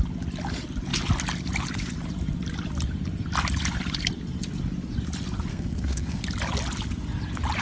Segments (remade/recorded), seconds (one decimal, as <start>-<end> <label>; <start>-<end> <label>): 0.0-5.5 recorded; 5.5-6.2 remade; 6.2-7.6 recorded